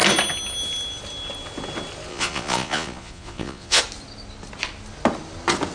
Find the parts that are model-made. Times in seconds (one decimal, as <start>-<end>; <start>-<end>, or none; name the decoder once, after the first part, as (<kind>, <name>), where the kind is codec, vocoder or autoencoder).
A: 2.1-3.8 (vocoder, Vocos)